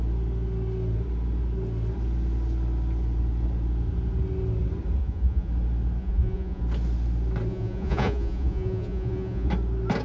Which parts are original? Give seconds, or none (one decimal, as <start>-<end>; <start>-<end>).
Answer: 0.0-5.0; 5.5-6.0; 6.6-7.5; 9.5-10.0